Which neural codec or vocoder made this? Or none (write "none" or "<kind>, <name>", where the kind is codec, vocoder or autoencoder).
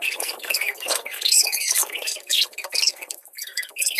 codec, SNAC